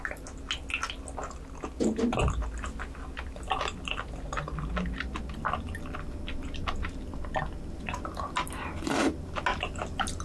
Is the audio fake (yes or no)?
no